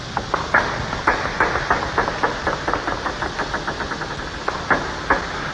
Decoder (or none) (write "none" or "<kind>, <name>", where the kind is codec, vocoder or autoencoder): none